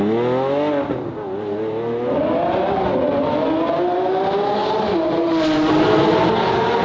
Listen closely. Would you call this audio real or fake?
real